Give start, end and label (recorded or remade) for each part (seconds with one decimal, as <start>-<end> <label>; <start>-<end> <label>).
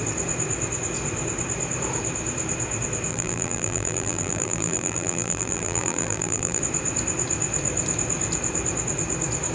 0.0-3.1 recorded; 3.1-6.6 remade; 6.6-9.5 recorded